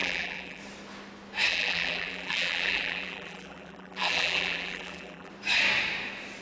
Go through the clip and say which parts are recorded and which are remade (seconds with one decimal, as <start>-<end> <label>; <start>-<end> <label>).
0.0-0.6 remade; 0.6-1.5 recorded; 1.5-5.3 remade; 5.3-6.4 recorded